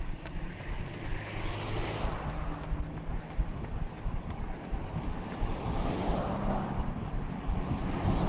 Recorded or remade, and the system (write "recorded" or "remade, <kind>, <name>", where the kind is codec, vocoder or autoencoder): recorded